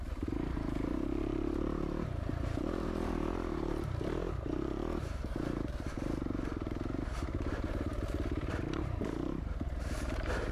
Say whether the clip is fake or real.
fake